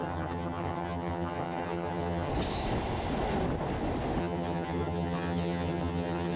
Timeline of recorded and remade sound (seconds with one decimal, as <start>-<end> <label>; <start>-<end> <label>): 0.0-2.3 remade; 2.3-4.2 recorded; 4.2-6.4 remade